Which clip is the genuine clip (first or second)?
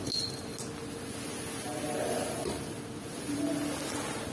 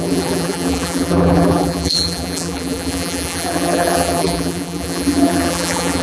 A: first